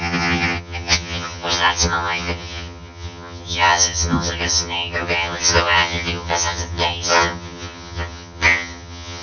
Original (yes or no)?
no